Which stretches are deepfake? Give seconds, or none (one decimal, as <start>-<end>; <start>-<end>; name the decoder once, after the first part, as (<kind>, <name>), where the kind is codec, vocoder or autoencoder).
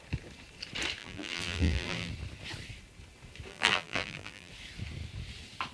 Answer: 1.0-2.1 (vocoder, BigVGAN v2); 3.5-4.5